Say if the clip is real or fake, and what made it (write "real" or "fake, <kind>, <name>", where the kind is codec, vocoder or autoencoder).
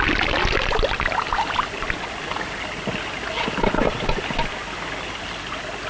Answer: real